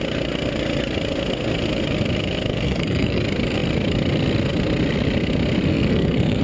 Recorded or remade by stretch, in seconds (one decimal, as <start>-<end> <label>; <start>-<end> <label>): 0.0-2.5 recorded; 2.5-3.2 remade; 3.2-5.7 recorded; 5.7-6.4 remade